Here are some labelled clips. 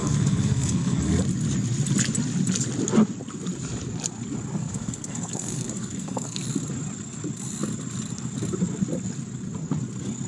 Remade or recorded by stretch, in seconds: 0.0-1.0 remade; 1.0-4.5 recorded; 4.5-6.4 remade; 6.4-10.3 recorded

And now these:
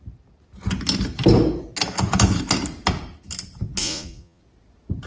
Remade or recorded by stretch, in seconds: 0.0-3.8 recorded; 3.8-4.4 remade; 4.4-5.1 recorded

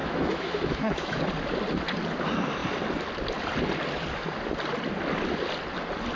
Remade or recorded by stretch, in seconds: 0.0-1.2 remade; 1.2-6.2 recorded

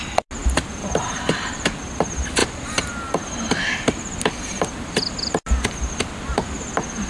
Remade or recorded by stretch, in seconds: 0.0-0.4 recorded; 0.4-1.8 remade; 1.8-7.1 recorded

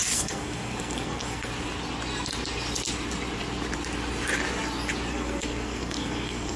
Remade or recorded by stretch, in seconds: 0.0-1.5 remade; 1.5-5.1 recorded; 5.1-6.6 remade